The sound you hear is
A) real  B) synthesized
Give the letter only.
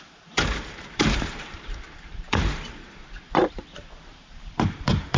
B